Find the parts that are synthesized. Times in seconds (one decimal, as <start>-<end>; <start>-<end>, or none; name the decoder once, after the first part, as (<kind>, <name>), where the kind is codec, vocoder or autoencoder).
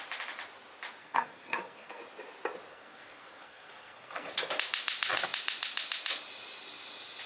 1.0-2.0 (codec, SNAC); 2.7-4.3